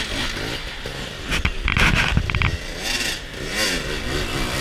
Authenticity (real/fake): real